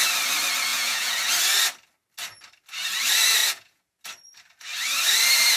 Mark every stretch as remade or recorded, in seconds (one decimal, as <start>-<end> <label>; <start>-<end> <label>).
0.0-0.7 recorded; 0.7-1.2 remade; 1.2-3.4 recorded; 3.4-4.0 remade; 4.0-5.6 recorded